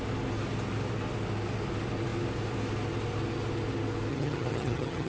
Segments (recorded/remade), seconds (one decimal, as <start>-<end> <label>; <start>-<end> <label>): 0.0-4.1 recorded; 4.1-5.1 remade